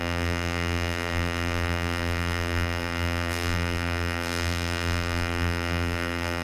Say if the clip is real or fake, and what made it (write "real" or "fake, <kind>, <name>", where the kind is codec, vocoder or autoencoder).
fake, vocoder, BigVGAN v2